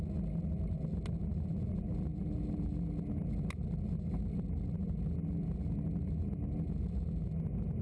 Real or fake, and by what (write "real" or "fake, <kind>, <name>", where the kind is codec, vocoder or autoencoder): real